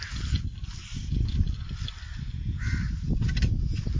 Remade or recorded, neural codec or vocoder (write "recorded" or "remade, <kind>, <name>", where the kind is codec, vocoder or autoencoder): recorded